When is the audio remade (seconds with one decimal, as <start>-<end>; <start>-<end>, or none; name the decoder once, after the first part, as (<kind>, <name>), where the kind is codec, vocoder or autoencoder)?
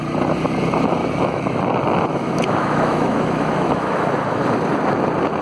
1.0-1.6 (autoencoder, DAC-VAE); 2.1-4.4